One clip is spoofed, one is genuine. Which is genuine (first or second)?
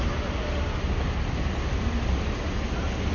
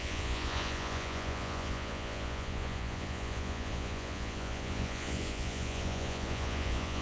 first